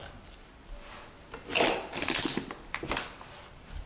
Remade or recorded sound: recorded